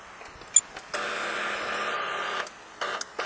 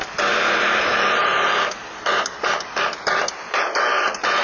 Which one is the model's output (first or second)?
second